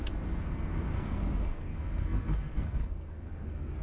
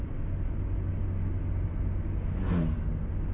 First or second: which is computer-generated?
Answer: first